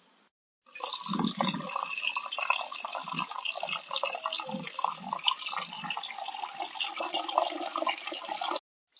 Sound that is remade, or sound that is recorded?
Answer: recorded